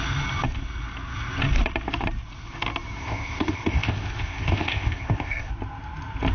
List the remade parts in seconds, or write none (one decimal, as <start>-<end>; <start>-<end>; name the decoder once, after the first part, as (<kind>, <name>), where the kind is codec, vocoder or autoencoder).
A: 3.0-5.5 (codec, ZipCodec)